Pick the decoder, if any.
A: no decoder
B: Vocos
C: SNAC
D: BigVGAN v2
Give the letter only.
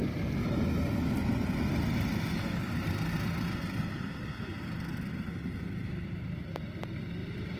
A